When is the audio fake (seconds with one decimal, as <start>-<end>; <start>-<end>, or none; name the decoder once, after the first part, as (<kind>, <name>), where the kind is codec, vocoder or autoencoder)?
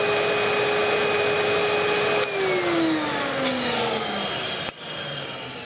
none